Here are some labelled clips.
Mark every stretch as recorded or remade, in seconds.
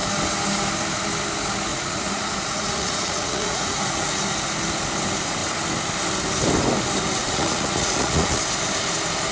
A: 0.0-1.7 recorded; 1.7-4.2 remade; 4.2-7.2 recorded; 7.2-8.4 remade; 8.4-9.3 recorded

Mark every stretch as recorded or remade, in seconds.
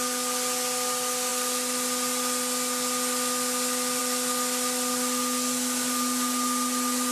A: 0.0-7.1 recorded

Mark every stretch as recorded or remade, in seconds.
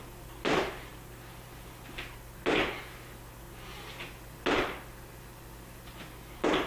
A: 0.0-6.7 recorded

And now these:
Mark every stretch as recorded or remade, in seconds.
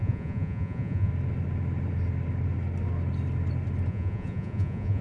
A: 0.0-1.1 remade; 1.1-3.9 recorded; 3.9-5.0 remade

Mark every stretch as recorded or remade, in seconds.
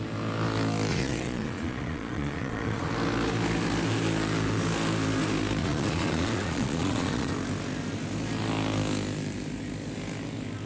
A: 0.0-0.9 recorded; 0.9-2.9 remade; 2.9-5.6 recorded; 5.6-7.3 remade; 7.3-10.7 recorded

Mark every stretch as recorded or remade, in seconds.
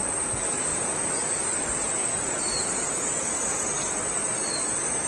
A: 0.0-0.7 recorded; 0.7-1.4 remade; 1.4-2.0 recorded; 2.0-3.6 remade; 3.6-5.1 recorded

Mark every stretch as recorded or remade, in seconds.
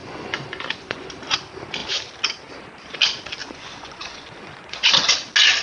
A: 0.0-1.1 remade; 1.1-3.4 recorded; 3.4-5.1 remade; 5.1-5.6 recorded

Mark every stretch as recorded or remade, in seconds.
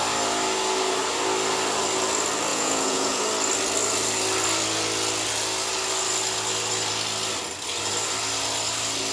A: 0.0-2.5 recorded; 2.5-3.2 remade; 3.2-9.1 recorded